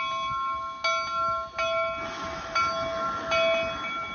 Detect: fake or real real